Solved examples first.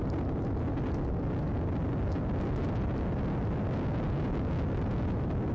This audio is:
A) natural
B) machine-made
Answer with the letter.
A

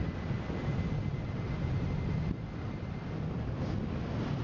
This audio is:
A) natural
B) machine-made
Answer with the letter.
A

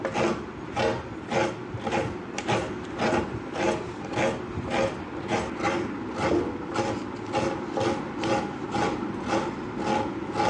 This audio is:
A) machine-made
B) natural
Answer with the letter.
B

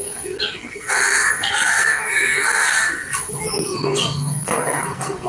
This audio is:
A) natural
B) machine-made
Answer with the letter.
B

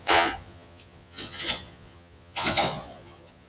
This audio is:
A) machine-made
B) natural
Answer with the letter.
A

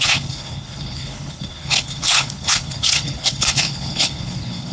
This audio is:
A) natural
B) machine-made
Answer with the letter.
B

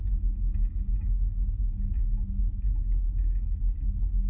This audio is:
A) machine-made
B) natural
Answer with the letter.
B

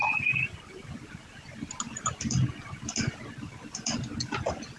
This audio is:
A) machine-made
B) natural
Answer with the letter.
B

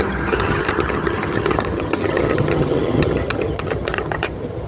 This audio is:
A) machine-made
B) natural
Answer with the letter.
A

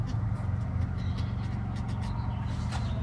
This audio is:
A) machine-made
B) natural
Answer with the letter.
B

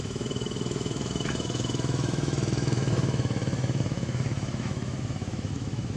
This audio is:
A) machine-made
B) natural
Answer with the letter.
A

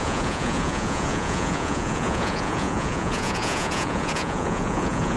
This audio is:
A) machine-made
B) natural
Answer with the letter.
A